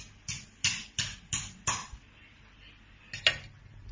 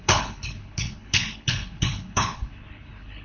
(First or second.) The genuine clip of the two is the first